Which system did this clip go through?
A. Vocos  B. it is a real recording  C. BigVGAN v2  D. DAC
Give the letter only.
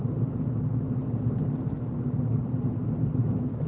B